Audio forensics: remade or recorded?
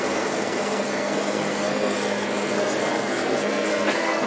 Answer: remade